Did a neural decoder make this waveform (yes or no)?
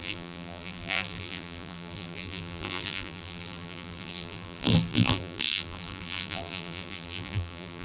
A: yes